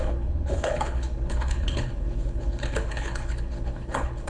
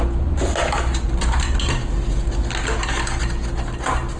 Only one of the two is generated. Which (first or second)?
first